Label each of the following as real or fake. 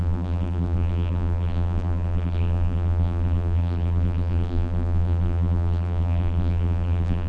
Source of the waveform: fake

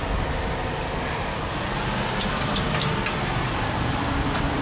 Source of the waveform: real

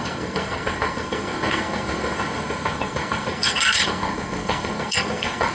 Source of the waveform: fake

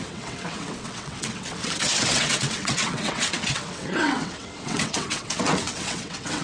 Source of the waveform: fake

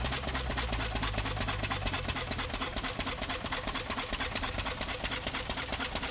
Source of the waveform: real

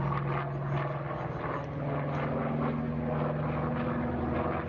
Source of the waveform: real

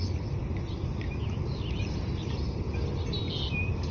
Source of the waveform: real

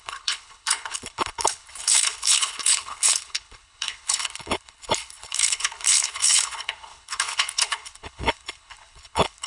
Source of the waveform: fake